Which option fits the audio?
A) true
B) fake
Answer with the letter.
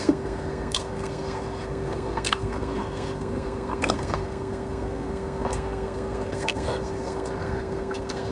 B